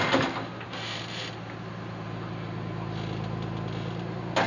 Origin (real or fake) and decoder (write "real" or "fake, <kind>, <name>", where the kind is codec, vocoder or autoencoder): real